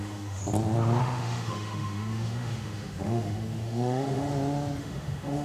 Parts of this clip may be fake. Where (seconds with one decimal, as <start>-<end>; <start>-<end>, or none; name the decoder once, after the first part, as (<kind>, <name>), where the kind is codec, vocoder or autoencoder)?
0.0-0.4 (autoencoder, DAC-VAE); 1.0-4.3; 4.8-5.4